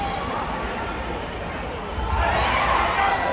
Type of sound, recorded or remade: recorded